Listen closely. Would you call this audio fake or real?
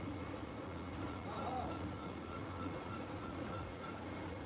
fake